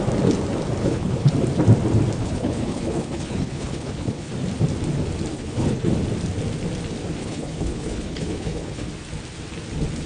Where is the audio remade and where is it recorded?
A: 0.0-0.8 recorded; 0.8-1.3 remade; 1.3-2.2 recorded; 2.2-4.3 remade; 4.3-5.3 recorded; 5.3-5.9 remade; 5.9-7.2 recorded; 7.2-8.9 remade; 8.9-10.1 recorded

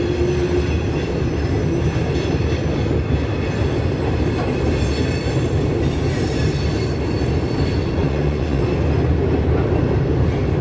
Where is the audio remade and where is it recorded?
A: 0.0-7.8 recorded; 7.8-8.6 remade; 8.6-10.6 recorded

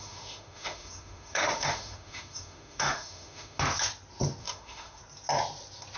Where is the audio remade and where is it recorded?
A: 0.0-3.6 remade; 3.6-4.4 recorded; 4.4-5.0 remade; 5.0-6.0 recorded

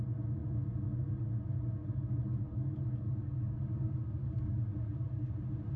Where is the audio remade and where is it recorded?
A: 0.0-1.8 recorded; 1.8-5.3 remade; 5.3-5.8 recorded